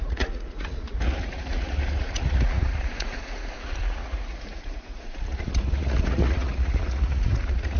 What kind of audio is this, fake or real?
fake